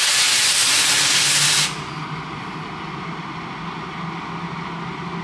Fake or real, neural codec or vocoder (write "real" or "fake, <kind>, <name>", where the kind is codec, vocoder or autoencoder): real